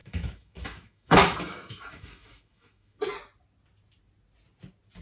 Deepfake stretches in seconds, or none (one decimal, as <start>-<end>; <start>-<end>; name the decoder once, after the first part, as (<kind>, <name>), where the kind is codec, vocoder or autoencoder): 0.0-3.0 (autoencoder, DAC-VAE)